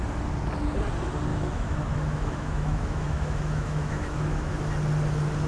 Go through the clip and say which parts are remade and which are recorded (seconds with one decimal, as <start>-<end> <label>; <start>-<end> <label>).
0.0-1.3 recorded; 1.3-4.6 remade; 4.6-5.5 recorded

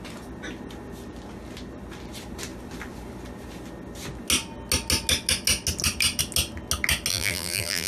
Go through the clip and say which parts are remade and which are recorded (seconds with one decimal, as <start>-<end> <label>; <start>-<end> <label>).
0.0-7.1 recorded; 7.1-7.9 remade

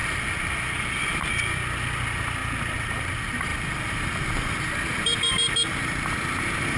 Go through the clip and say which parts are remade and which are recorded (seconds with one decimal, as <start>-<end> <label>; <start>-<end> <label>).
0.0-3.5 recorded; 3.5-5.3 remade; 5.3-6.8 recorded

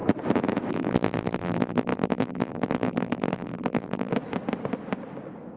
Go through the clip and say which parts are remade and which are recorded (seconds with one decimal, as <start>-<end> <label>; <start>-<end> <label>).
0.0-0.7 recorded; 0.7-4.1 remade; 4.1-5.6 recorded

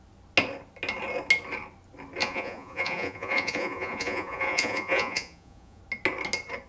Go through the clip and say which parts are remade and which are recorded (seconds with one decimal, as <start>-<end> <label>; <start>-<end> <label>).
0.0-2.2 recorded; 2.2-5.8 remade; 5.8-6.7 recorded

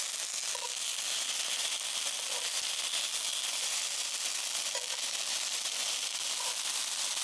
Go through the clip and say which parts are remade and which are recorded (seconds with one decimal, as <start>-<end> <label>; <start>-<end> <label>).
0.0-7.2 recorded